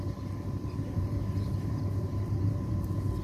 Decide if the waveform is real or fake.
fake